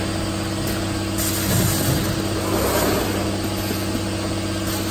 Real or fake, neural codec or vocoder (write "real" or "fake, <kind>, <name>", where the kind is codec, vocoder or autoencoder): real